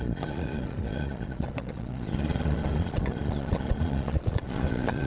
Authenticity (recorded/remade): remade